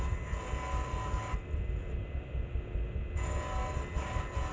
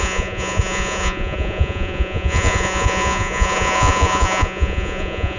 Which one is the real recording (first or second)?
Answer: first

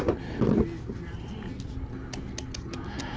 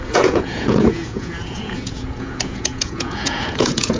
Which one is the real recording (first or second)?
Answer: first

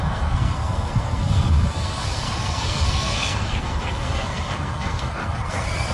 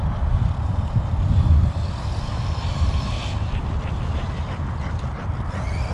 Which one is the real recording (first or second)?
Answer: second